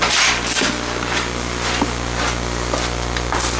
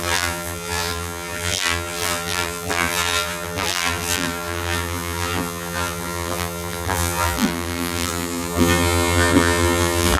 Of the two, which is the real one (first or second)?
first